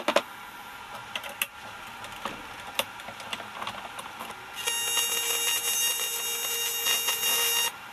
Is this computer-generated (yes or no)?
no